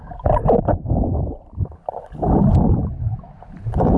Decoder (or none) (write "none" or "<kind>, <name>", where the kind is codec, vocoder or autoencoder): none